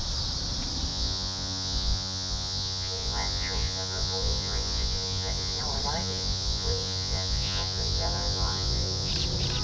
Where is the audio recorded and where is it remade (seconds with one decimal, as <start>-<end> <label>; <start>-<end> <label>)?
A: 0.0-0.9 recorded; 0.9-5.6 remade; 5.6-6.0 recorded; 6.0-9.1 remade; 9.1-9.6 recorded